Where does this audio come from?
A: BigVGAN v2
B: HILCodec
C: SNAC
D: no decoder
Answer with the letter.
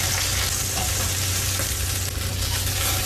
D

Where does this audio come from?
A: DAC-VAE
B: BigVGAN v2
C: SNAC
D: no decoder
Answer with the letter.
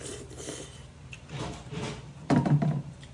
B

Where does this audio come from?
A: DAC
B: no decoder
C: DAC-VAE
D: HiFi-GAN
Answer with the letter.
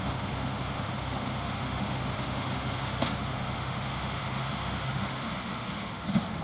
C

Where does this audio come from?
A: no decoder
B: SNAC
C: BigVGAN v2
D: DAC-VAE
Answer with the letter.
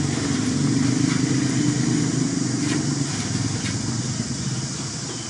A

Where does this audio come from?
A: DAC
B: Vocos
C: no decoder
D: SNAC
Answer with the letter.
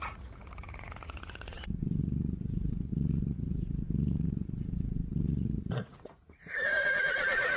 B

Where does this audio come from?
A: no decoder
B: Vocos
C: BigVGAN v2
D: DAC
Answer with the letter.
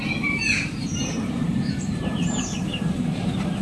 C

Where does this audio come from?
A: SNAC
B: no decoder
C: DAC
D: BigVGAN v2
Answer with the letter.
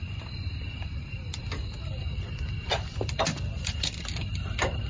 B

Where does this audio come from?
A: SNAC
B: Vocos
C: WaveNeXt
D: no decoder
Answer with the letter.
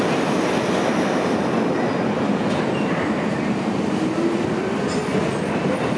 D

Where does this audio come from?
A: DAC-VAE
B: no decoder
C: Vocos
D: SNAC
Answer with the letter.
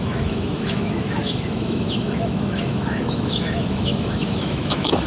A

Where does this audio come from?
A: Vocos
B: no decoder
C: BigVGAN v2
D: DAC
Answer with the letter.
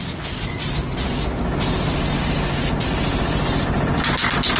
C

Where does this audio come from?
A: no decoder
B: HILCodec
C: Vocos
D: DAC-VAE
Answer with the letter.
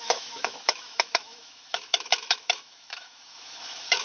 D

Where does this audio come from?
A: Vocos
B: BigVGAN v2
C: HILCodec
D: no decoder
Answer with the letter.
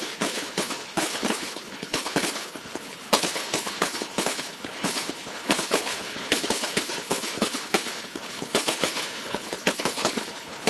C